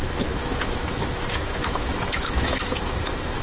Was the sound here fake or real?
fake